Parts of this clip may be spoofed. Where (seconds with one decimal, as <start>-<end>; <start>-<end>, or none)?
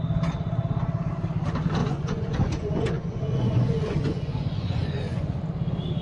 1.8-5.4